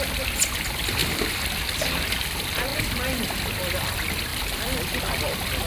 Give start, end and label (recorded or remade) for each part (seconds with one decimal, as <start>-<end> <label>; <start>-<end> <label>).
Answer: 0.0-4.3 recorded; 4.3-4.8 remade; 4.8-5.7 recorded